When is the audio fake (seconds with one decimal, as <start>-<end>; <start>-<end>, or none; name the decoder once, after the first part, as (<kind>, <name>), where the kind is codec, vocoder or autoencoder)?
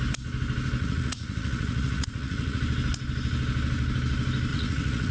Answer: 0.8-2.6 (vocoder, Vocos); 4.5-5.1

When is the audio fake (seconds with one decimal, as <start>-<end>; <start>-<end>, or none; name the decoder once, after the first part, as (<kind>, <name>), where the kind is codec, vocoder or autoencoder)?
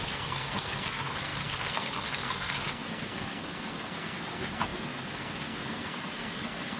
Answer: 0.0-6.8 (codec, SNAC)